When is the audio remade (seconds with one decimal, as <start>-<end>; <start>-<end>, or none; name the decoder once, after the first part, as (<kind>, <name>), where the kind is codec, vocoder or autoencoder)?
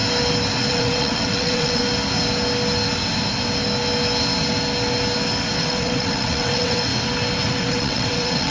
0.7-1.8 (vocoder, WaveNeXt); 5.6-6.9; 7.5-8.5